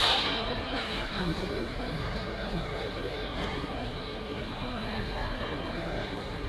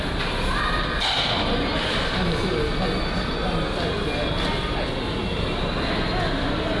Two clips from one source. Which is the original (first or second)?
second